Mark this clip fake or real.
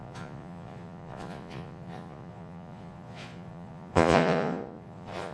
fake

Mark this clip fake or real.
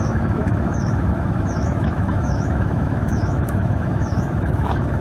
fake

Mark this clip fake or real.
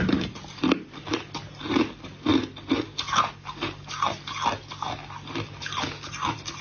real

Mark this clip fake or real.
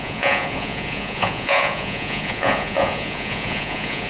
fake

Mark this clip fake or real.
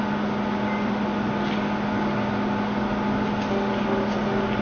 real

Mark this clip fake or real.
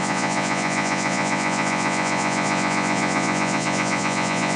fake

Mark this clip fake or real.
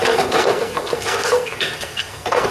fake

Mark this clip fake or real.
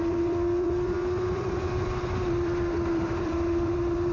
fake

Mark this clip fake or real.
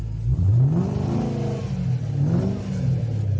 real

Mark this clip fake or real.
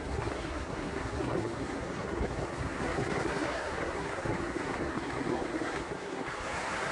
fake